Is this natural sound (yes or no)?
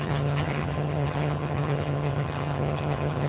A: no